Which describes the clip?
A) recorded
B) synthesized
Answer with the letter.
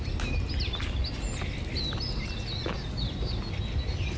A